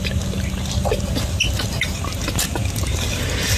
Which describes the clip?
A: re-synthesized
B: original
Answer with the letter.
B